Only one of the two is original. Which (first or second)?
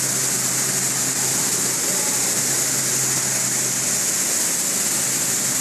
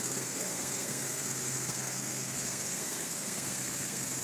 first